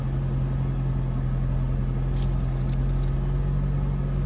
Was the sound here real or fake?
real